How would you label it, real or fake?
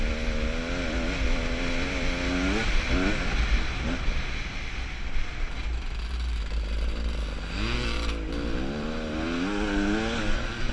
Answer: real